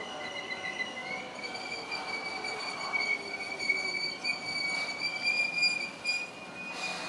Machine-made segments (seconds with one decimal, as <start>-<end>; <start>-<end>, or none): 0.0-5.6